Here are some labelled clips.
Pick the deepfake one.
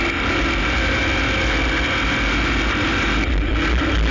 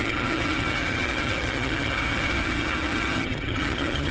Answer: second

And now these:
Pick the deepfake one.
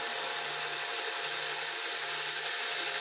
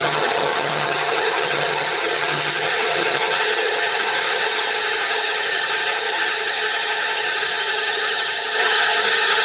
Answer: second